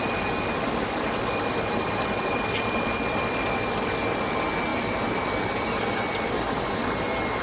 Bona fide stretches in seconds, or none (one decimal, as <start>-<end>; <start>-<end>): 0.0-4.7; 6.7-7.4